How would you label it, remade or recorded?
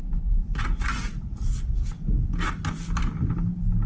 recorded